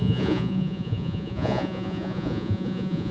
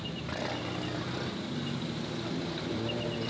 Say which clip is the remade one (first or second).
first